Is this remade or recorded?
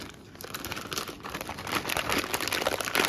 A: recorded